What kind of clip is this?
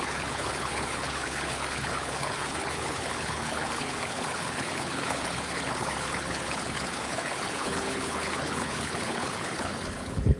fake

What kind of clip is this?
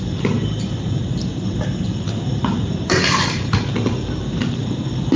real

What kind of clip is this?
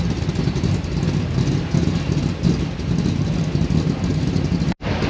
real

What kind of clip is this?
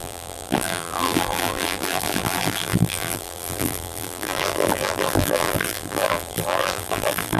fake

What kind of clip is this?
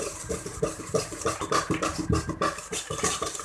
fake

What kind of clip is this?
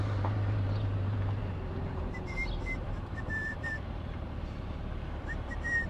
fake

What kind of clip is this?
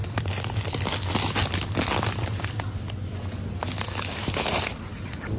real